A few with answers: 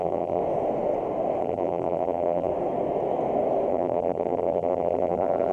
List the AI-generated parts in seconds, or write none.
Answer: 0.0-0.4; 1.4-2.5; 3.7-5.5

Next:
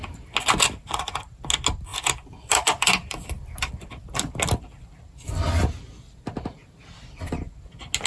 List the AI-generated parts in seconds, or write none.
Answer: 1.9-4.6

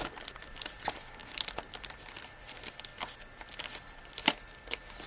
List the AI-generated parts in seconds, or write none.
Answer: none

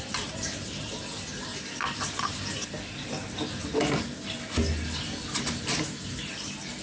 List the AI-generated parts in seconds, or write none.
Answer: 0.0-1.5; 5.6-6.8

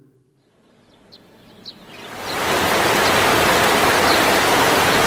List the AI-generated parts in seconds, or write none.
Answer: none

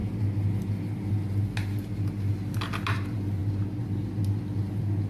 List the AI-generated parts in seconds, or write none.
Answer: none

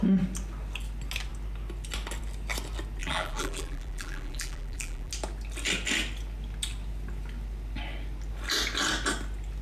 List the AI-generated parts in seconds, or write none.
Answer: 3.0-5.1

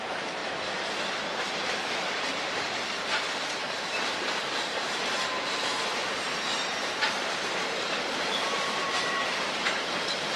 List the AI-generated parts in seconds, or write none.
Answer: 0.0-0.4; 1.5-10.4